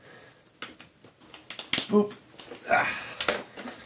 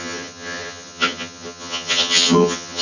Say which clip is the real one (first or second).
first